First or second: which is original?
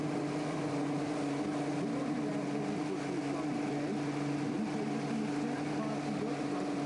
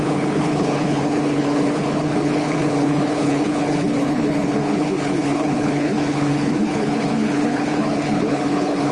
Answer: first